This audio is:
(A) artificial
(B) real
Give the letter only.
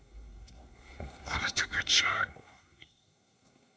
A